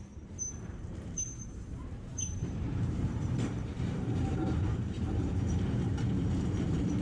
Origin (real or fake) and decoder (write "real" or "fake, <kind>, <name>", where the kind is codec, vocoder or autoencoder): fake, vocoder, BigVGAN v2